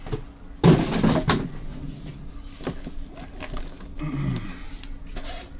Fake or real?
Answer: real